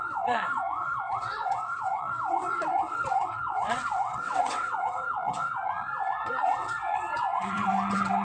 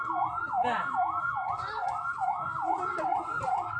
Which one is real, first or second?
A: second